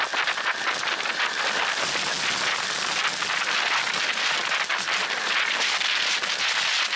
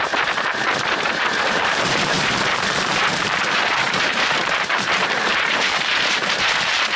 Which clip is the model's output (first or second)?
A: second